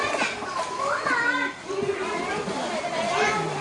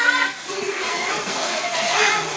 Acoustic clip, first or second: first